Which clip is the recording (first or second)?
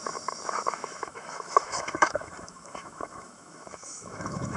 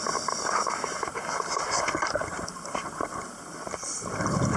second